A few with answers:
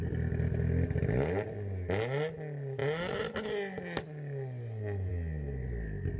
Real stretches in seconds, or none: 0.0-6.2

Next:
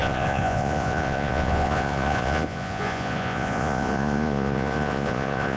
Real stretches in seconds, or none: none